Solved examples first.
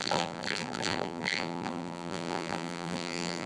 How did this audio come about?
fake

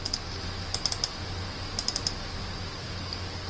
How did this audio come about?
real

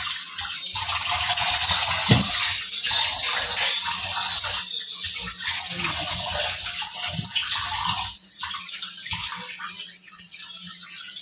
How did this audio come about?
real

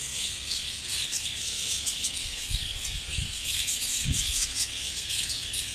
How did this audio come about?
fake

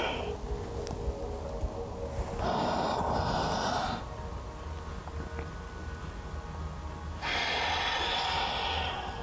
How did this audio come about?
real